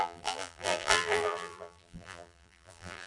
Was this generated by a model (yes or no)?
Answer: yes